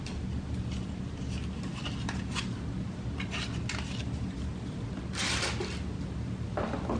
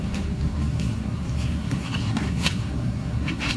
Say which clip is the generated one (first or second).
second